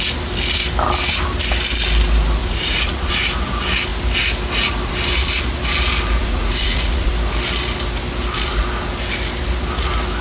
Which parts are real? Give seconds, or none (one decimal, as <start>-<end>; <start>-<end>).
0.0-2.4; 3.1-6.2; 7.1-10.2